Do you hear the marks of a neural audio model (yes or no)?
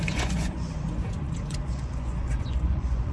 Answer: yes